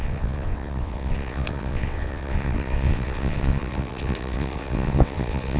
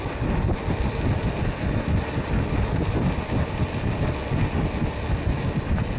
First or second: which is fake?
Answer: first